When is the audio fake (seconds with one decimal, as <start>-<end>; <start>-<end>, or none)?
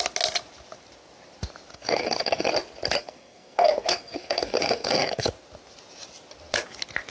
1.7-2.5; 3.0-5.3